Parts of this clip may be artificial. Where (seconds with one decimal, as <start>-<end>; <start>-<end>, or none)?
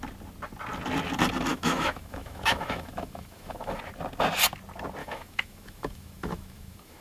1.5-3.8; 5.0-7.0